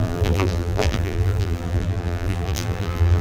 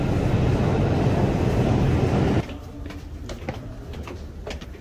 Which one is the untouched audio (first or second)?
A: second